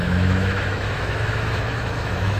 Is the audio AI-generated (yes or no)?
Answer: yes